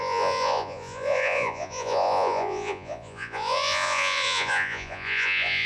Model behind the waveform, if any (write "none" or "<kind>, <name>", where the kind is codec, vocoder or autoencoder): vocoder, Vocos